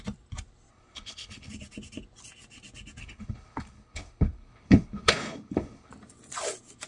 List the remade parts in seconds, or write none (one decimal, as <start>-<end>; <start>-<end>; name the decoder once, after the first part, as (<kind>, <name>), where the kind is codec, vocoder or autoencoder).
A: 0.7-1.5 (codec, HILCodec); 3.0-5.9